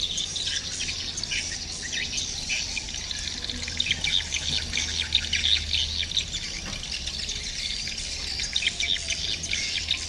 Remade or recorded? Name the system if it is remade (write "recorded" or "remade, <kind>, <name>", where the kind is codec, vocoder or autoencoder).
recorded